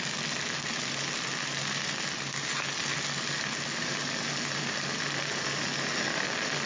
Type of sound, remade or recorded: recorded